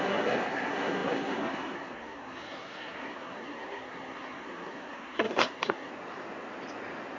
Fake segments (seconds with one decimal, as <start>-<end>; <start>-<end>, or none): 0.0-5.9

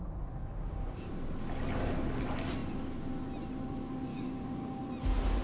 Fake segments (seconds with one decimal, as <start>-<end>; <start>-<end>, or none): 0.4-1.1; 4.1-4.8

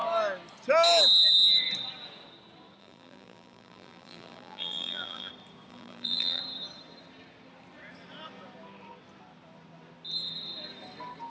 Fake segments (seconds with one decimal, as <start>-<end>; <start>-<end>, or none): 2.8-5.3; 5.7-6.4

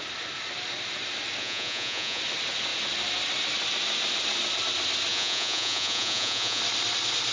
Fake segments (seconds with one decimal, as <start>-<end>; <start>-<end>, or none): 1.4-2.2; 5.1-6.6

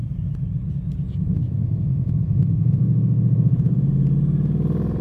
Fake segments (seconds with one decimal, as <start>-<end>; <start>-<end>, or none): 1.4-3.9